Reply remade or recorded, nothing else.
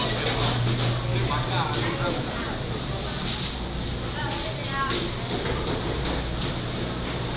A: recorded